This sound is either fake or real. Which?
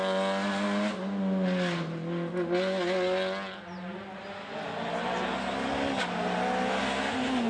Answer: real